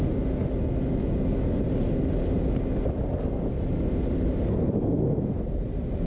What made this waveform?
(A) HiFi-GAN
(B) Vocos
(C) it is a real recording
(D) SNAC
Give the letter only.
C